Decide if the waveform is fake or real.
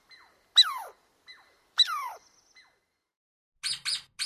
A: real